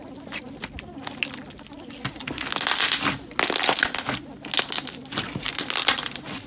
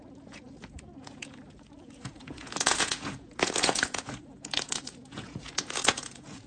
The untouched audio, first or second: first